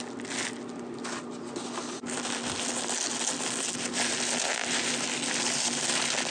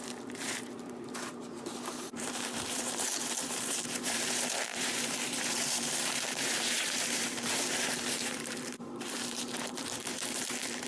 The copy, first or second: second